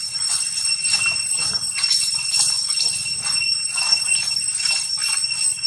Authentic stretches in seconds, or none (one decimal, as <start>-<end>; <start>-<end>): 0.0-5.7